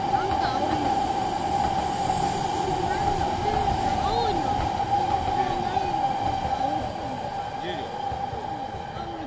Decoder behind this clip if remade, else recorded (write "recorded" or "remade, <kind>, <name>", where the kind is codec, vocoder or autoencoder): recorded